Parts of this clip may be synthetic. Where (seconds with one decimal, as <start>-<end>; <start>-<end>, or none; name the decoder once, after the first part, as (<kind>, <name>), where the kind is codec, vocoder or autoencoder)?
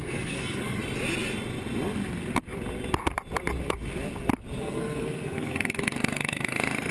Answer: 0.0-0.8 (codec, SNAC); 4.6-6.9